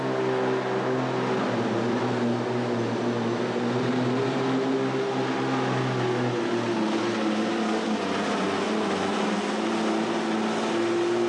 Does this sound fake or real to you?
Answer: real